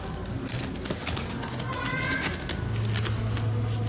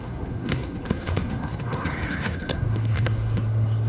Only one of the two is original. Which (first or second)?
first